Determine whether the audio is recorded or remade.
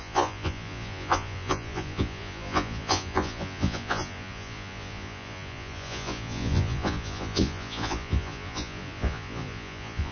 remade